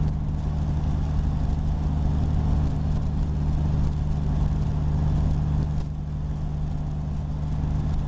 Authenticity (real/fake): real